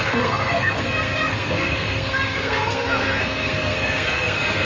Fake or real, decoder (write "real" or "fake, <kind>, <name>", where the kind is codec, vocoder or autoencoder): fake, codec, SNAC